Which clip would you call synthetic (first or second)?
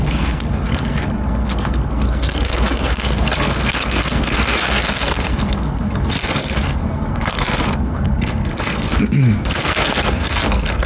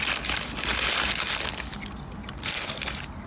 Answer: first